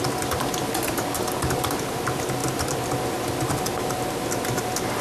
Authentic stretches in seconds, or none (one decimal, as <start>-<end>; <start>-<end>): 0.0-5.0